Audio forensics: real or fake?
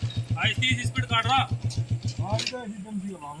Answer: real